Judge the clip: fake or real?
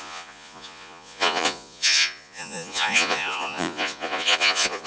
fake